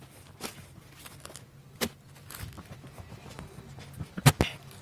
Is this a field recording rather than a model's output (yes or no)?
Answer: yes